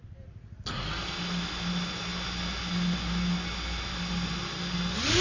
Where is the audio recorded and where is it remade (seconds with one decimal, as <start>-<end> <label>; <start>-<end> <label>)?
0.0-5.2 recorded